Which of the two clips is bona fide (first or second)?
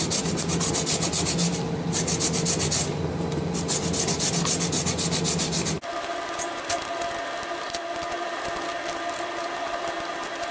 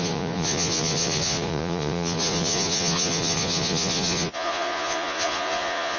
first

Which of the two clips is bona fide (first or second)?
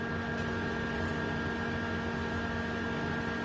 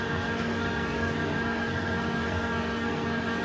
first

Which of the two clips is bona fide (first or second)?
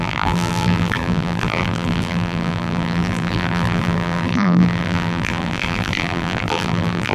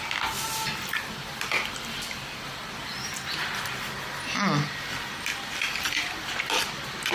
second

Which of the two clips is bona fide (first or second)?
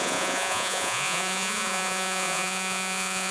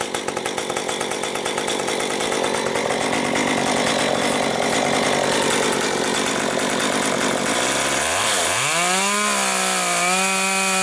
second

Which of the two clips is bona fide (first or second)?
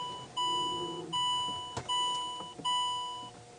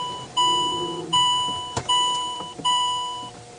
first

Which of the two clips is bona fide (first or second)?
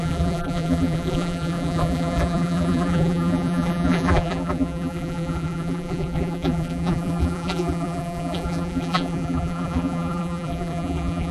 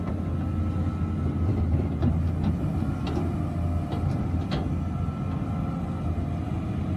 second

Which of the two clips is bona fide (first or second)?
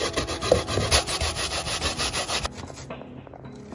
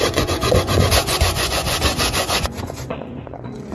first